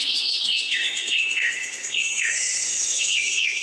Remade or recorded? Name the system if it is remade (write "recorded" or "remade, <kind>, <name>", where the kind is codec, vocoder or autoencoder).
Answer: remade, codec, SNAC